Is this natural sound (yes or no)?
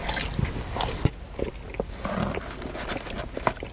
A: yes